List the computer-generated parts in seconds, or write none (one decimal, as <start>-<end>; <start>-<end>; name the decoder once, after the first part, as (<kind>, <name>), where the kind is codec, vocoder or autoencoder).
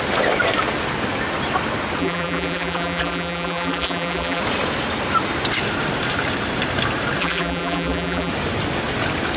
2.0-4.4 (vocoder, BigVGAN v2); 7.2-8.3